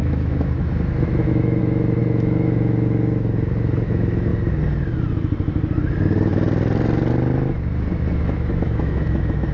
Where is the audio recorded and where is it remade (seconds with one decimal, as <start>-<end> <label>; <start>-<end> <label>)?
0.0-4.3 remade; 4.3-8.2 recorded; 8.2-9.5 remade